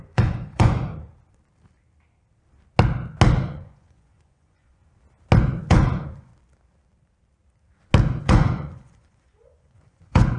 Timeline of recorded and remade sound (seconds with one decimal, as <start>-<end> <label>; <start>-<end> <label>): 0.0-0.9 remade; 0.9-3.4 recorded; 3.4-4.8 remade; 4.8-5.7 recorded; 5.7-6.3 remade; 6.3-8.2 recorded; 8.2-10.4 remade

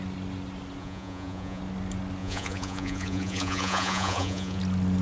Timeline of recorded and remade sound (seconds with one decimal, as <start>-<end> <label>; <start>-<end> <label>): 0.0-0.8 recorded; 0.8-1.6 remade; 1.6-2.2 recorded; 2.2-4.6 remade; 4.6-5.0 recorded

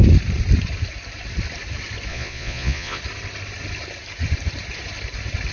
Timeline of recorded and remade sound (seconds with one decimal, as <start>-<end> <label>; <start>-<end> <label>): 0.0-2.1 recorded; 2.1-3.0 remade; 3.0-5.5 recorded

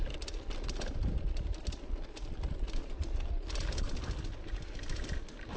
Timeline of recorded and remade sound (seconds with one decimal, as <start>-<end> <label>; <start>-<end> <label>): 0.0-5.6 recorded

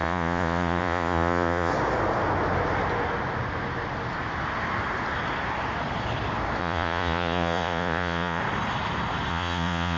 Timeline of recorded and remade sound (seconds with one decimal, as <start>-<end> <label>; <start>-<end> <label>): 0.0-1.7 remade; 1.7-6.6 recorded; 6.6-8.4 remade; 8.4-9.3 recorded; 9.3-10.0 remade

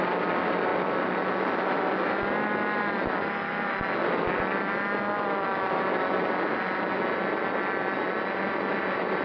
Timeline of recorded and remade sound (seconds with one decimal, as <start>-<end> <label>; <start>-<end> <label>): 0.0-9.2 recorded

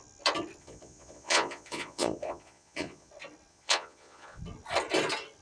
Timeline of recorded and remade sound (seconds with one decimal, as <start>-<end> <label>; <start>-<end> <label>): 0.0-0.6 recorded; 0.6-3.1 remade; 3.1-3.5 recorded; 3.5-4.4 remade; 4.4-5.4 recorded

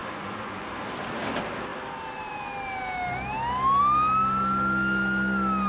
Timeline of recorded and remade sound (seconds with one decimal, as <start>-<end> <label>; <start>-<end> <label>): 0.0-0.6 remade; 0.6-5.7 recorded